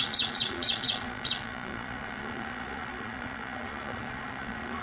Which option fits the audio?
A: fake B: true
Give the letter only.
A